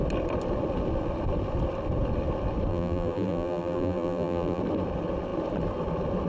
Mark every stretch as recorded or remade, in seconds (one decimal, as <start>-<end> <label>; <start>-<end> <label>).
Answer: 0.0-2.7 recorded; 2.7-4.6 remade; 4.6-6.3 recorded